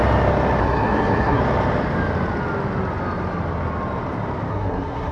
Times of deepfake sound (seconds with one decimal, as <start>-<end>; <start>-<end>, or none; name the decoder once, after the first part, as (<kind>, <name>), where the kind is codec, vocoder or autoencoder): 0.6-1.4 (codec, SNAC); 4.5-5.1